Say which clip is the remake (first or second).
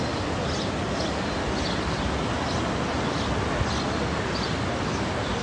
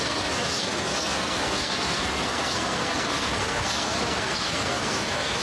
second